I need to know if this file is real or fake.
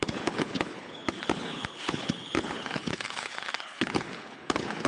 fake